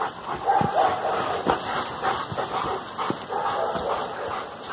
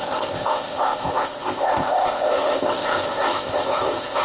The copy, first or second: second